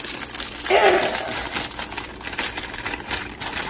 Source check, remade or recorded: recorded